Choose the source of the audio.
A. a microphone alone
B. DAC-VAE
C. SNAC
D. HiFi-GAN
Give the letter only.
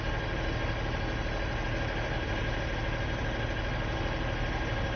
A